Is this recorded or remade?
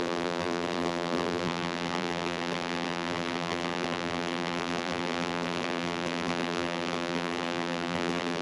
remade